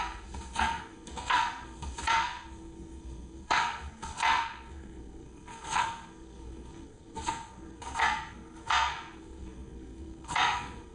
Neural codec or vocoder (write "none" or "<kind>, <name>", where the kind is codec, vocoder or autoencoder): codec, SNAC